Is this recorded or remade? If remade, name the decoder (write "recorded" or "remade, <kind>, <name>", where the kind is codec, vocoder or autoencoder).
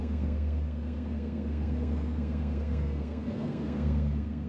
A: remade, codec, SNAC